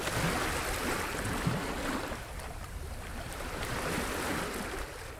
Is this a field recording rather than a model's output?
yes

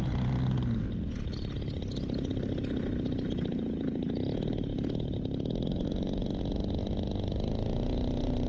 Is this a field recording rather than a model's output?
yes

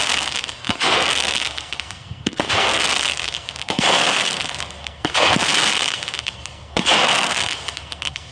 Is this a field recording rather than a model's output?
no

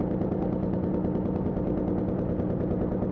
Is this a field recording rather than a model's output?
yes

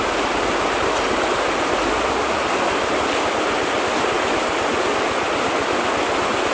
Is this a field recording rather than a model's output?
yes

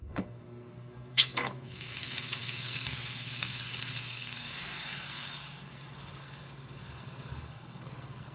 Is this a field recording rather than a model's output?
no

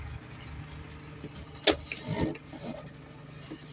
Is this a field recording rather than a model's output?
yes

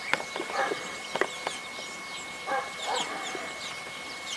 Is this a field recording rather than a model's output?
yes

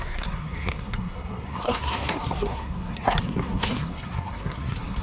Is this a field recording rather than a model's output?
no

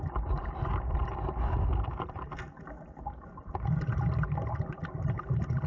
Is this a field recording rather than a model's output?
yes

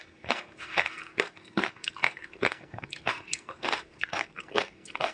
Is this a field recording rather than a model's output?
no